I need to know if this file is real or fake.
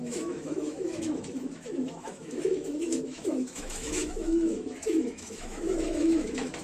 fake